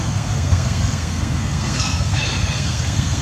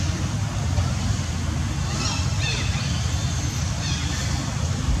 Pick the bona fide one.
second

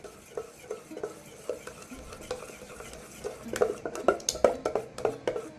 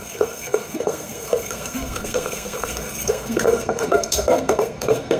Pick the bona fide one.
first